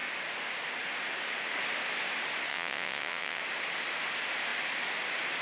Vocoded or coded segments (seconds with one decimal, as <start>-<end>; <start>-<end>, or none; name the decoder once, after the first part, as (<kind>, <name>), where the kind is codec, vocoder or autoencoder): 2.5-3.4 (vocoder, WaveNeXt)